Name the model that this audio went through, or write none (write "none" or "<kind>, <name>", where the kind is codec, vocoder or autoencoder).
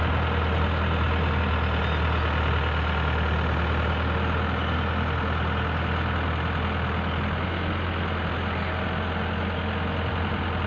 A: none